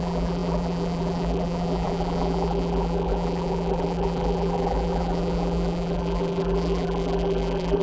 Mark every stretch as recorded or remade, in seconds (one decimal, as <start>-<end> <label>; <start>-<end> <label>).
0.0-7.8 remade